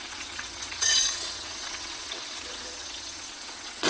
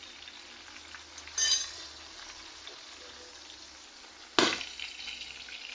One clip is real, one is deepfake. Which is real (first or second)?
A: second